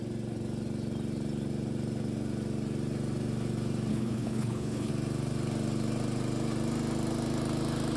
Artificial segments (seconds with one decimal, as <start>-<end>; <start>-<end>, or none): 3.9-4.9